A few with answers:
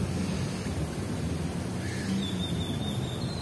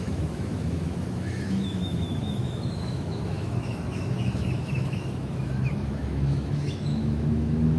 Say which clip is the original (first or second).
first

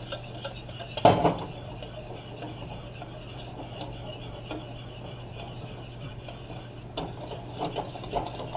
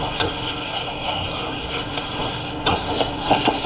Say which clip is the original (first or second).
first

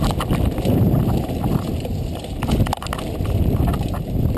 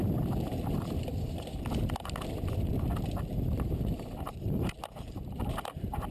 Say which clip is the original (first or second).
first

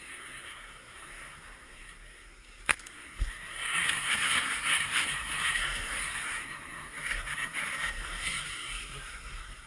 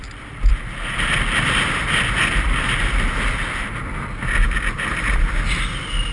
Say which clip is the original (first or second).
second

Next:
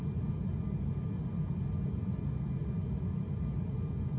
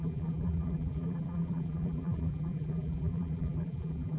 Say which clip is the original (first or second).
first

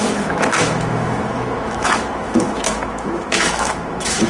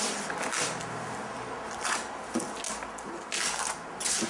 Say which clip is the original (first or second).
second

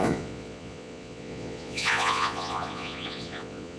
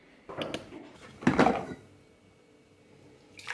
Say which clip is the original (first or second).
second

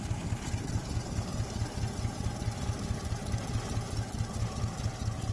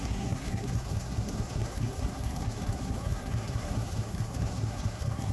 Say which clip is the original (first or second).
first